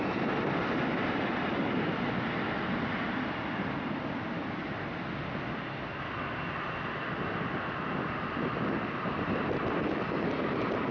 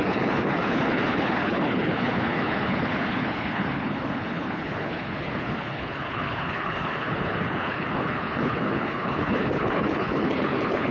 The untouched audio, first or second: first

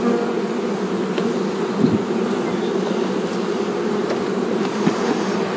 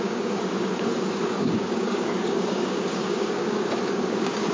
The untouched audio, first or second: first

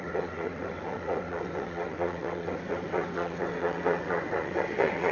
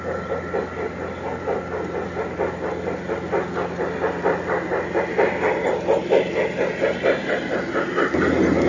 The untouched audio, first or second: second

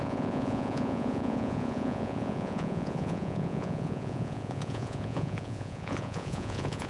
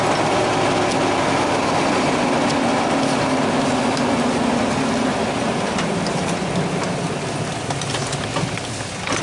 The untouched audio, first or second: second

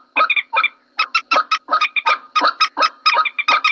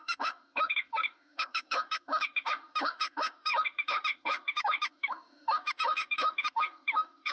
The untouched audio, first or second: first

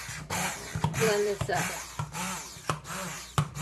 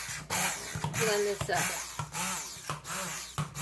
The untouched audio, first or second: second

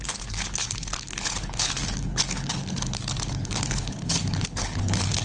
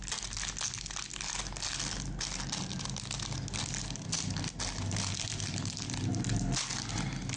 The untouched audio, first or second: second